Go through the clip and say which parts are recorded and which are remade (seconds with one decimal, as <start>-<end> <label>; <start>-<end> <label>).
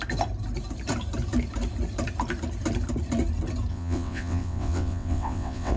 0.0-3.7 recorded; 3.7-5.8 remade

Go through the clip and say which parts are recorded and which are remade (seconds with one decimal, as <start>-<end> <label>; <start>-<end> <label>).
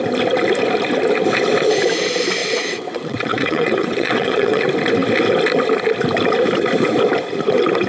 0.0-2.4 recorded; 2.4-4.6 remade; 4.6-7.9 recorded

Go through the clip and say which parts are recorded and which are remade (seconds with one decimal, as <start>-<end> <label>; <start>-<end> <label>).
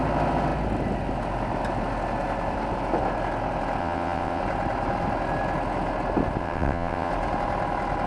0.0-3.8 recorded; 3.8-4.4 remade; 4.4-6.4 recorded; 6.4-7.1 remade; 7.1-8.1 recorded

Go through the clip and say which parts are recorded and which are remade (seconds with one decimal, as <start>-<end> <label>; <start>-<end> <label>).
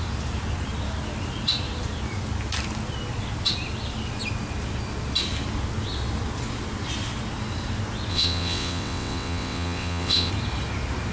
0.0-8.1 recorded; 8.1-10.3 remade; 10.3-11.1 recorded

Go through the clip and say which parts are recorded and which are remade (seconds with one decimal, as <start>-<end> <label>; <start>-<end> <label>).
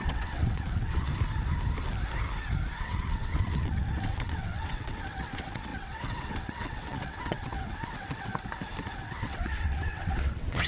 0.0-1.1 remade; 1.1-2.7 recorded; 2.7-8.3 remade; 8.3-9.0 recorded; 9.0-10.7 remade